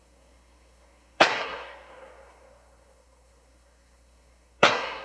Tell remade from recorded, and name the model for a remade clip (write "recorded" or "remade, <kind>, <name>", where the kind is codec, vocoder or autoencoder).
remade, codec, SNAC